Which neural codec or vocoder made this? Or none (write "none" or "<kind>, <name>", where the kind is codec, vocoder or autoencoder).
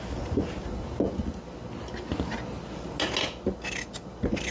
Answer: none